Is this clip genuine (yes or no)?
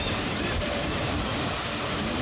no